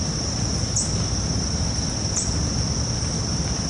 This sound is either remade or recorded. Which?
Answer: recorded